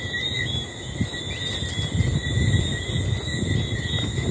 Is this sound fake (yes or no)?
no